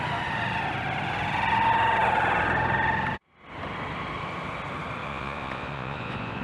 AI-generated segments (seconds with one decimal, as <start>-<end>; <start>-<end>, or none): 5.0-6.4